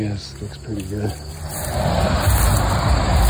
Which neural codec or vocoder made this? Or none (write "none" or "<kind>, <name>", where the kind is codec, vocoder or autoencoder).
none